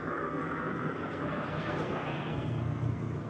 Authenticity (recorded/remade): remade